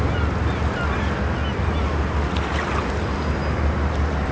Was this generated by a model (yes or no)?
no